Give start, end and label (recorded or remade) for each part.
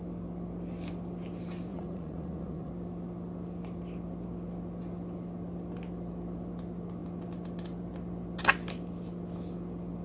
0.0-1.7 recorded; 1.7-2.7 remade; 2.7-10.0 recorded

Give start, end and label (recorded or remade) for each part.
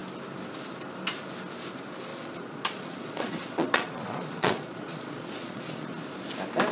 0.0-2.1 recorded; 2.1-5.9 remade; 5.9-6.7 recorded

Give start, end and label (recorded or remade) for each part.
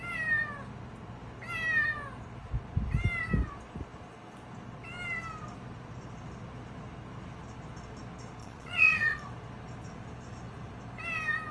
0.0-8.4 recorded; 8.4-9.2 remade; 9.2-11.5 recorded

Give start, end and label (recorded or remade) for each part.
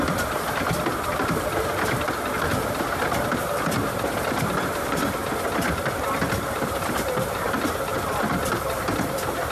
0.0-9.5 recorded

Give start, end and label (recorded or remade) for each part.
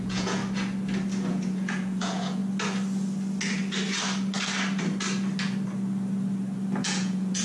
0.0-0.4 remade; 0.4-1.3 recorded; 1.3-2.4 remade; 2.4-6.8 recorded; 6.8-7.4 remade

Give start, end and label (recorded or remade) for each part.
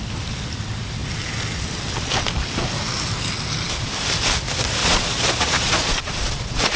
0.0-4.8 recorded; 4.8-6.8 remade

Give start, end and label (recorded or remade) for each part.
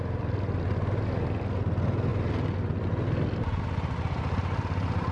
0.0-5.1 recorded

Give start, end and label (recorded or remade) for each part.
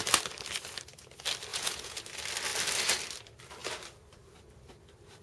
0.0-1.5 recorded; 1.5-2.0 remade; 2.0-5.2 recorded